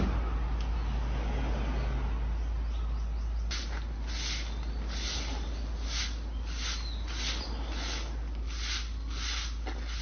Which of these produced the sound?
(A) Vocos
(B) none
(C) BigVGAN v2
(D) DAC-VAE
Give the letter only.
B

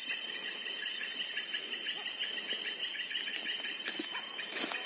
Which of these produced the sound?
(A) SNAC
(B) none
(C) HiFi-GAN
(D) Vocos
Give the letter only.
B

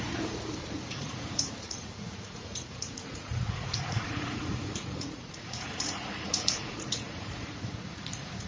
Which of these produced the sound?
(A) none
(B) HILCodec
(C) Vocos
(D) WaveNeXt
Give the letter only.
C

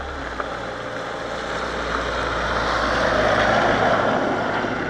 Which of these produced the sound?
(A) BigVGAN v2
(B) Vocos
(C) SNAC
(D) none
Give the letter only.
D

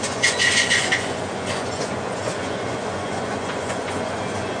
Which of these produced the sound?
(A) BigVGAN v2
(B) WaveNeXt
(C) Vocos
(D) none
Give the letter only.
C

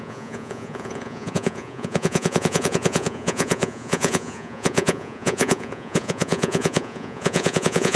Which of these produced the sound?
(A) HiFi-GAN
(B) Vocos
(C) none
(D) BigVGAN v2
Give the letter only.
B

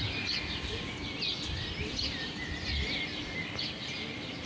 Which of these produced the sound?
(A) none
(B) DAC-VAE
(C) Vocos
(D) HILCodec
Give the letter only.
A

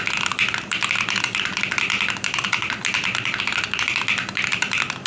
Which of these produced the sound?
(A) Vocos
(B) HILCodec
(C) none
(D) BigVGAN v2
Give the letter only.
C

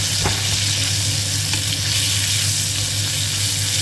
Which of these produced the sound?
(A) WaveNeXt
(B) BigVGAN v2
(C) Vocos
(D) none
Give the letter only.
D